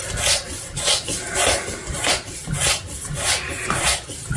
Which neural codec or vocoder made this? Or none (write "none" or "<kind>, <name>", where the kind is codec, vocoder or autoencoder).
none